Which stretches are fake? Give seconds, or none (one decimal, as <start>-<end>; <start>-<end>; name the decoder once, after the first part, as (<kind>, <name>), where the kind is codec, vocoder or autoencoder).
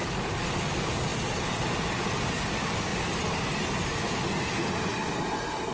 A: none